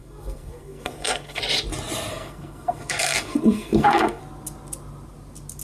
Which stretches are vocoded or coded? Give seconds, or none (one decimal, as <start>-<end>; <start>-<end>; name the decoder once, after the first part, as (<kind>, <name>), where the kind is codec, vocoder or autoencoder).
0.0-1.4 (codec, SNAC); 2.1-4.2